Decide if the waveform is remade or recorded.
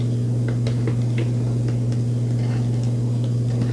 recorded